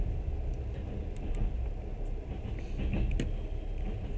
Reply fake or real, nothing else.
real